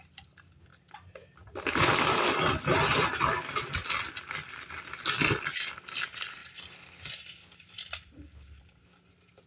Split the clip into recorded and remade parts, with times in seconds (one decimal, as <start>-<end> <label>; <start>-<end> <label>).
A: 0.0-0.7 recorded; 0.7-2.5 remade; 2.5-3.8 recorded; 3.8-5.0 remade; 5.0-6.4 recorded; 6.4-8.3 remade; 8.3-9.5 recorded